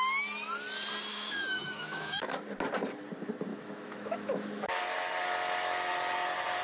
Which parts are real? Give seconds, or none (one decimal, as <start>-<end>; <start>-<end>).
0.0-1.1; 2.3-3.5; 4.8-6.6